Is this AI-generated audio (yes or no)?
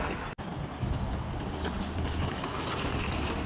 no